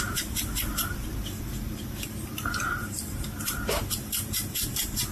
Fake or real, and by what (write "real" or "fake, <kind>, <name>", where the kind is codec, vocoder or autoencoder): fake, vocoder, BigVGAN v2